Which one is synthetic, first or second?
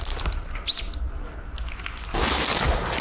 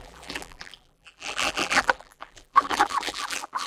second